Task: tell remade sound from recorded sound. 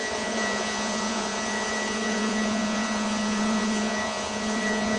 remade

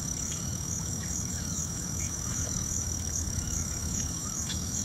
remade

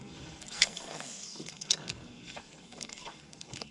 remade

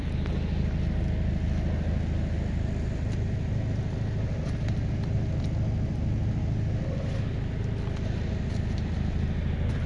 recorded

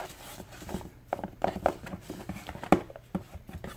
remade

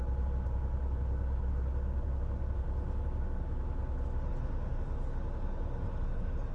recorded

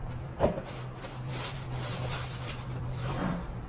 remade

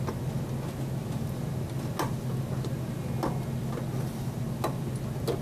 recorded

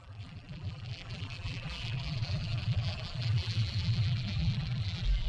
remade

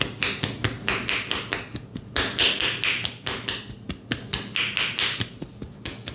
recorded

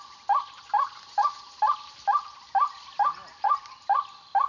recorded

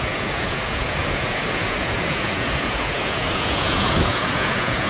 remade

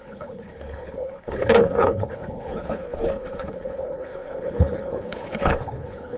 remade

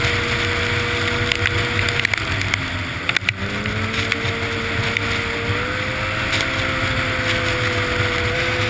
recorded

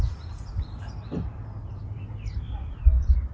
remade